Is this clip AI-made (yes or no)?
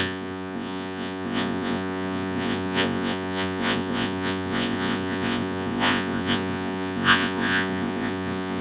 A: yes